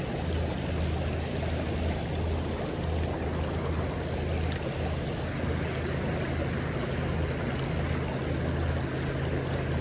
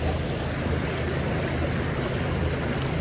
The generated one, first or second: second